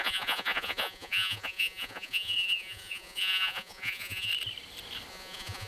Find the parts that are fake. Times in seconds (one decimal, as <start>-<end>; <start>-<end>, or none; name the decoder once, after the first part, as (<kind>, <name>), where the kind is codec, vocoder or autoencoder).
0.0-4.3 (vocoder, Vocos); 5.1-5.7